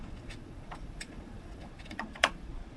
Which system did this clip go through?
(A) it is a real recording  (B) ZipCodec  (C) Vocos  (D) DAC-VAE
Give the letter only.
C